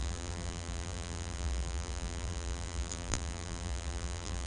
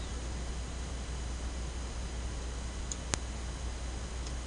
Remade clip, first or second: first